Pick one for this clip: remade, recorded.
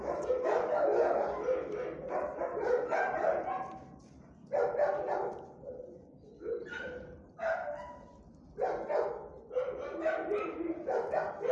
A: recorded